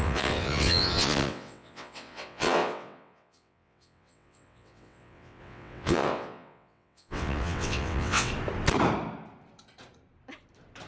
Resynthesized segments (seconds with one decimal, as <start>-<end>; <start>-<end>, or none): 0.0-8.3